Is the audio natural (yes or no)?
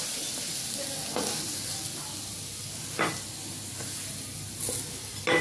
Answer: yes